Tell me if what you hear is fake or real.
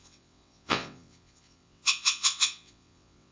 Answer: fake